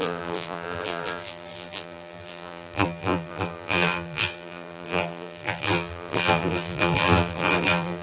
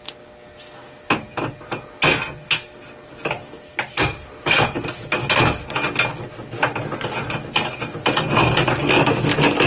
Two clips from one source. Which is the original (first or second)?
second